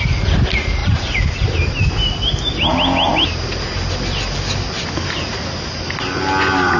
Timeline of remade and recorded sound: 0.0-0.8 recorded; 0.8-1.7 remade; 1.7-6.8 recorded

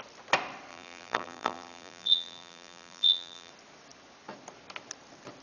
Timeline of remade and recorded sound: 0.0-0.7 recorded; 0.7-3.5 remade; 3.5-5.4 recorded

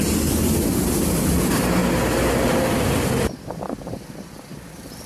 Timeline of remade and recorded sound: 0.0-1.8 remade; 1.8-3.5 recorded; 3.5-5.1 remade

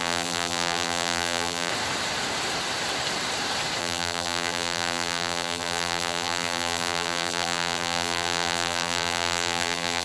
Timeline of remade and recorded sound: 0.0-1.7 remade; 1.7-3.8 recorded; 3.8-10.0 remade

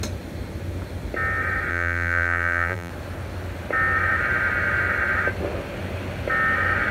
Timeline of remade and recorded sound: 0.0-1.7 recorded; 1.7-2.9 remade; 2.9-6.9 recorded

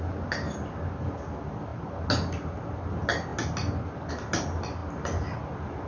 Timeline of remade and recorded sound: 0.0-5.9 recorded

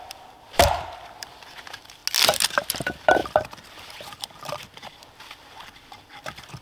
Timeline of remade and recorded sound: 0.0-2.0 remade; 2.0-2.7 recorded; 2.7-6.6 remade

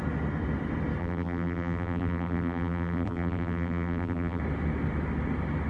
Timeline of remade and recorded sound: 0.0-1.0 recorded; 1.0-4.4 remade; 4.4-5.7 recorded